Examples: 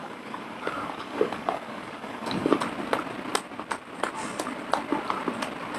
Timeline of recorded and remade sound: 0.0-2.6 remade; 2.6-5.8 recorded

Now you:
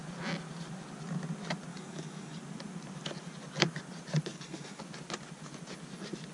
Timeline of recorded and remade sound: 0.0-1.7 recorded; 1.7-2.4 remade; 2.4-4.3 recorded; 4.3-4.8 remade; 4.8-6.3 recorded

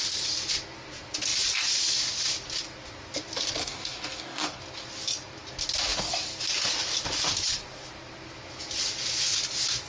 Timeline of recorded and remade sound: 0.0-3.6 recorded; 3.6-4.6 remade; 4.6-9.9 recorded

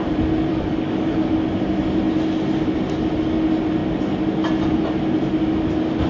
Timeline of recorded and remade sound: 0.0-0.5 recorded; 0.5-1.3 remade; 1.3-6.1 recorded

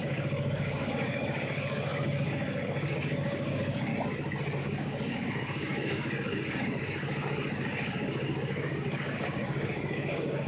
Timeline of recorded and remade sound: 0.0-3.9 remade; 3.9-4.6 recorded; 4.6-10.5 remade